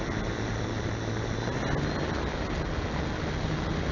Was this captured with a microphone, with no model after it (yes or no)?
yes